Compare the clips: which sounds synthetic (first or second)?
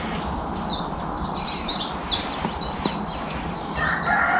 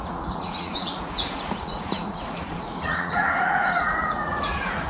second